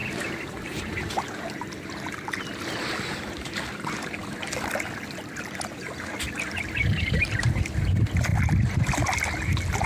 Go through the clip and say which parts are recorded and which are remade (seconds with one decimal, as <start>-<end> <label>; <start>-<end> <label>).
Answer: 0.0-4.0 remade; 4.0-6.8 recorded; 6.8-7.6 remade; 7.6-8.3 recorded; 8.3-8.9 remade; 8.9-9.9 recorded